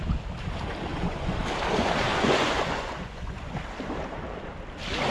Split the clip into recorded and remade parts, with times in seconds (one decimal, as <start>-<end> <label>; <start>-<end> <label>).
0.0-0.9 recorded; 0.9-1.4 remade; 1.4-2.1 recorded; 2.1-3.5 remade; 3.5-5.1 recorded